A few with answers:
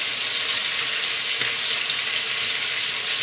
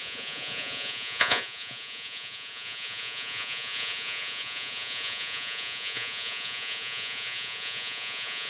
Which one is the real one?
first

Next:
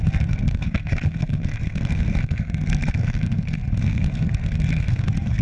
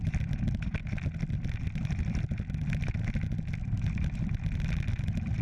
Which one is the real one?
second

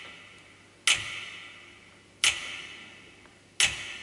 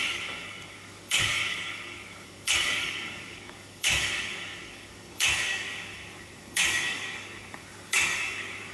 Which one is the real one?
first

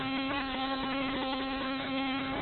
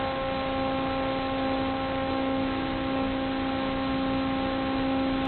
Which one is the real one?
second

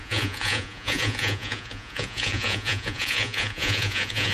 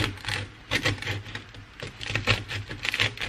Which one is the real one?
second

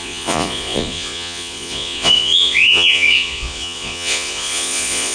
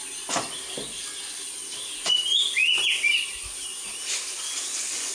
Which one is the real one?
second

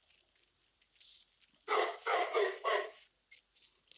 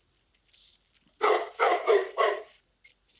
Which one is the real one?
first